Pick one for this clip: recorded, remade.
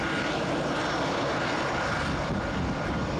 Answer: recorded